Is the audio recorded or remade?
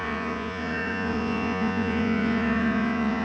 remade